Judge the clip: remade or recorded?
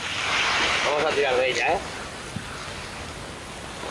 recorded